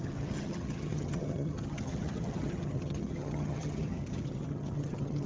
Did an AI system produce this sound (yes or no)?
yes